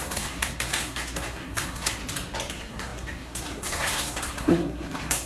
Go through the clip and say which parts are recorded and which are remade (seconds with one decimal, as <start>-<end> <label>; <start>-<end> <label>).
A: 0.0-2.0 remade; 2.0-2.5 recorded; 2.5-5.3 remade